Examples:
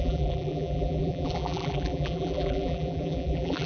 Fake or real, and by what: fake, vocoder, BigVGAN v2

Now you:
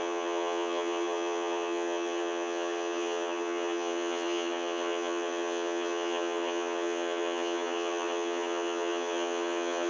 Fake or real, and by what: fake, vocoder, HiFi-GAN